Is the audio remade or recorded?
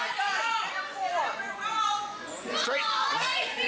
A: remade